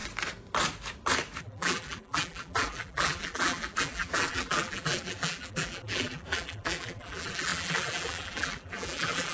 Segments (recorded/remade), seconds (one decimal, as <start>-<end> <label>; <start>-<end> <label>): 0.0-1.4 recorded; 1.4-9.3 remade